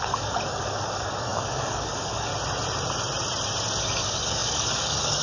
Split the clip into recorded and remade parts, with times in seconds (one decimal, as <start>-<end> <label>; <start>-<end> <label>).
0.0-2.3 remade; 2.3-3.8 recorded; 3.8-5.2 remade